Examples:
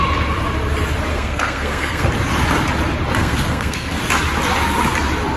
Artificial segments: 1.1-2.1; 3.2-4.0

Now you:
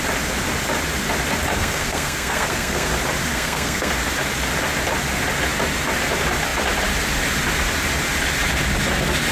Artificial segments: 1.5-2.9; 3.3-3.9

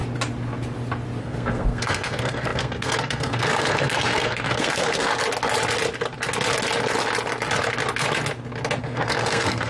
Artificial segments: 1.2-5.1; 8.8-9.7

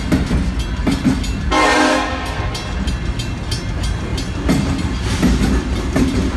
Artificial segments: 1.9-2.4